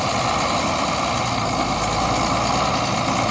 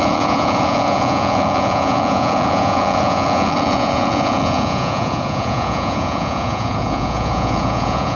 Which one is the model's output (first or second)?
second